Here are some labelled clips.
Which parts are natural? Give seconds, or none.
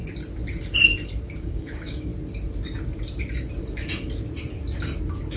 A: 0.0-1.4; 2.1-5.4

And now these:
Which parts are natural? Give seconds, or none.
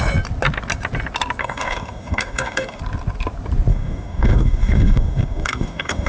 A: 0.0-1.4; 2.8-3.7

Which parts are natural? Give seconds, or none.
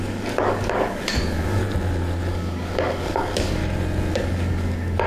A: 1.6-2.3; 3.6-4.1